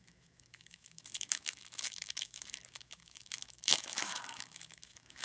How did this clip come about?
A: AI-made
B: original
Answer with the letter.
A